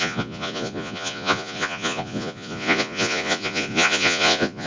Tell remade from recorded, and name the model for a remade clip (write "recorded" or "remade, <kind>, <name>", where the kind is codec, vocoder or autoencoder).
remade, vocoder, Vocos